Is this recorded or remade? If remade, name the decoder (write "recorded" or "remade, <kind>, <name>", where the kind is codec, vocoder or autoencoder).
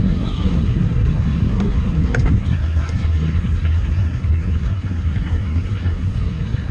remade, codec, SNAC